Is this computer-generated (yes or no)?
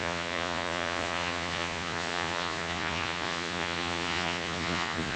yes